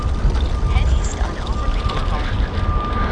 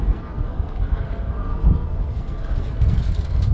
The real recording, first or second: first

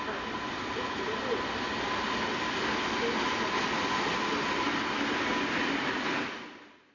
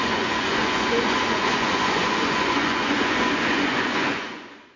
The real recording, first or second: first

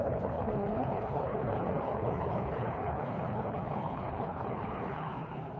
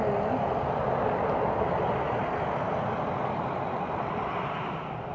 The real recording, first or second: second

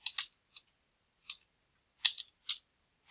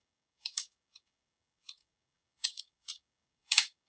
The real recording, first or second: first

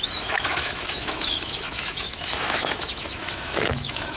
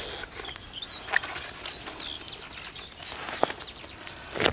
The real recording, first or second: second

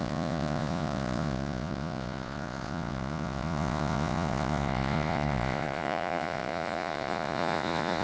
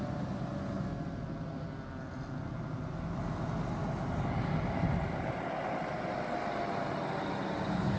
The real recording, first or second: second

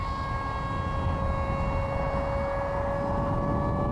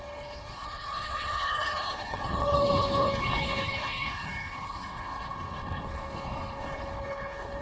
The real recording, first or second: first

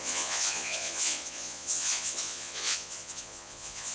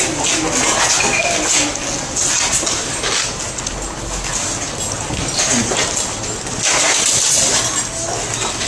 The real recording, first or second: second